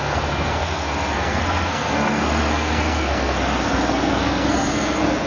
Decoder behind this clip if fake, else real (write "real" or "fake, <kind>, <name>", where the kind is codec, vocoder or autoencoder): fake, codec, SNAC